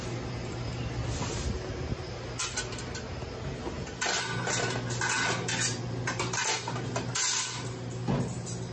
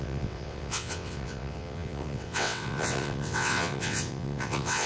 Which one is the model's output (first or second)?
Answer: second